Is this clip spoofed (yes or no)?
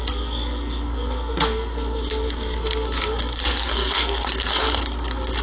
yes